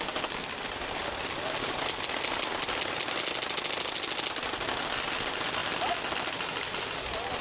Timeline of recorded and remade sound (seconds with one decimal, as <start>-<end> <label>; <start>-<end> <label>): 0.0-7.4 recorded